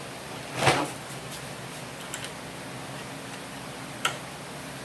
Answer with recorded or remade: recorded